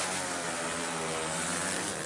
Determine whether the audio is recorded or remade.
remade